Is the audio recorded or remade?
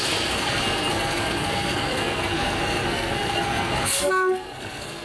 remade